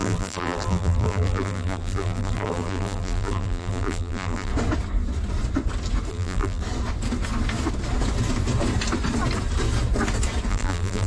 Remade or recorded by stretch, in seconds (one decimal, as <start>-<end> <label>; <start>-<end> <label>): 0.0-4.5 remade; 4.5-6.1 recorded; 6.1-6.6 remade; 6.6-10.5 recorded; 10.5-11.1 remade